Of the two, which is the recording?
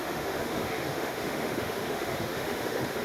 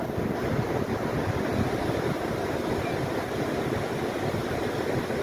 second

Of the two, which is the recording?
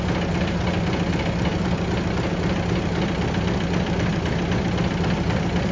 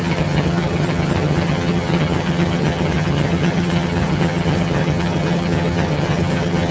first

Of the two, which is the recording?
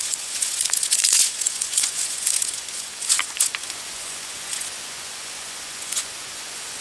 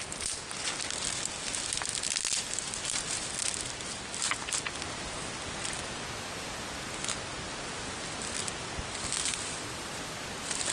second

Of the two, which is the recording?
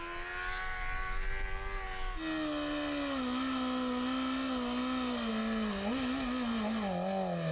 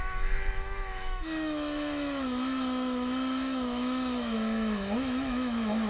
first